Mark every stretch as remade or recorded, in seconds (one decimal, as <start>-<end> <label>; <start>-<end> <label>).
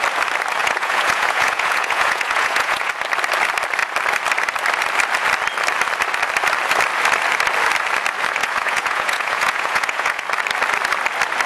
0.0-0.6 recorded; 0.6-2.9 remade; 2.9-8.4 recorded; 8.4-10.2 remade; 10.2-11.5 recorded